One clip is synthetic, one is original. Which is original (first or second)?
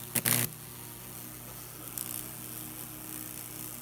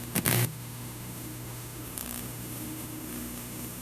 first